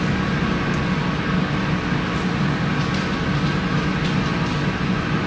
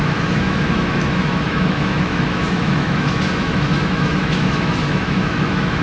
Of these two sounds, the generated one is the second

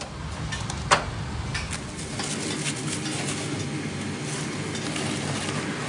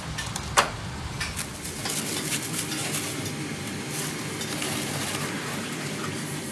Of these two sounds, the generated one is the second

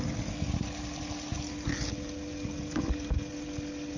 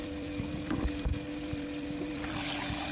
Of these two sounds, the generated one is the second